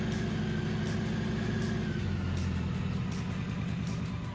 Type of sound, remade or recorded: recorded